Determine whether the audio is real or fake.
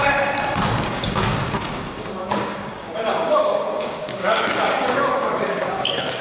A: fake